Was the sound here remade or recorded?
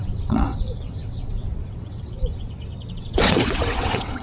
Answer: remade